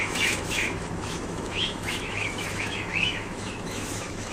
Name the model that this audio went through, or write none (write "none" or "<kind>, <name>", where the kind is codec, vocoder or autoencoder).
autoencoder, DAC-VAE